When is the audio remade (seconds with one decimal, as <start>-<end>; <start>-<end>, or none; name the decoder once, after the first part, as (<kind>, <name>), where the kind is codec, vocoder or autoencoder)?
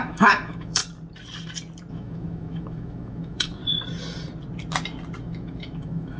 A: 0.0-0.8 (autoencoder, DAC-VAE); 1.9-3.6; 5.2-6.2